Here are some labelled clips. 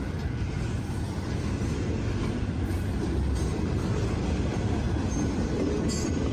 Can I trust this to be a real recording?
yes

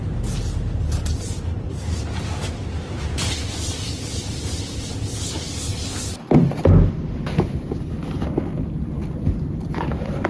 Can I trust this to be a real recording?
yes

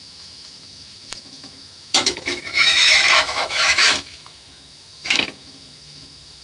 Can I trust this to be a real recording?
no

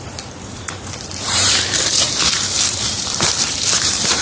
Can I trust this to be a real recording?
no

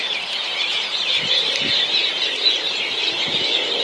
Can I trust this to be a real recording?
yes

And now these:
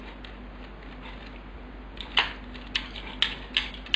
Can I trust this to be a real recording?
yes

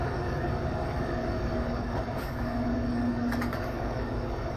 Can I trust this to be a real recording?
no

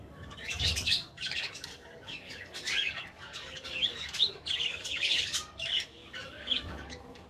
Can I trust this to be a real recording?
no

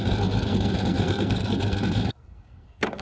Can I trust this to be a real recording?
no